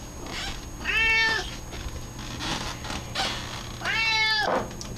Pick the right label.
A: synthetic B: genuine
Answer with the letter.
B